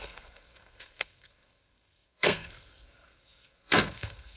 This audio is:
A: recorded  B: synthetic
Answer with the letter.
B